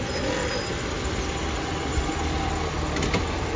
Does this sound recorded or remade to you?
recorded